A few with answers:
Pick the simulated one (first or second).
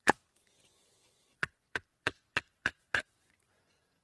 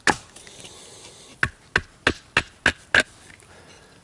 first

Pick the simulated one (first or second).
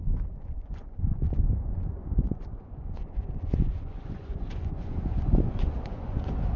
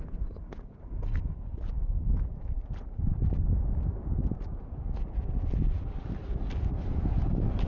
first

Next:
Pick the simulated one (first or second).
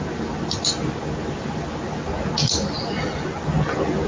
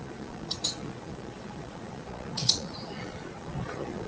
second